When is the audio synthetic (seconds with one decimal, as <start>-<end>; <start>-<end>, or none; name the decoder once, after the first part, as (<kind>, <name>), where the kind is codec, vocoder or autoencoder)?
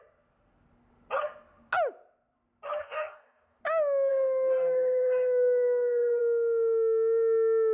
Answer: 2.8-3.6 (codec, DAC); 4.1-6.2